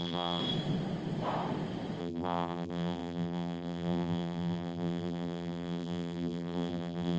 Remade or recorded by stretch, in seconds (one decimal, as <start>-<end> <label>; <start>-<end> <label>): 0.0-0.4 remade; 0.4-2.0 recorded; 2.0-7.2 remade